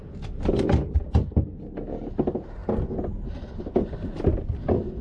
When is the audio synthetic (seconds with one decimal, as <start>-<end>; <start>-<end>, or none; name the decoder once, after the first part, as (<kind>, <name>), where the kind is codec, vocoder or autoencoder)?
none